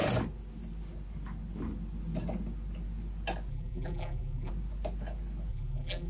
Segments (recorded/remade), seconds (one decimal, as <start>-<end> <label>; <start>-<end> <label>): 0.0-3.5 recorded; 3.5-4.5 remade; 4.5-5.5 recorded; 5.5-6.1 remade